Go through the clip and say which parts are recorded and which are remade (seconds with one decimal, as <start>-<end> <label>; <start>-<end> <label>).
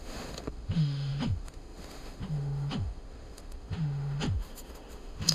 0.0-5.3 remade